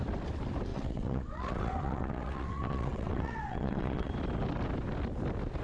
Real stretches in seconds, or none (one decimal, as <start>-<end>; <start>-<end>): 0.0-0.7; 4.1-5.6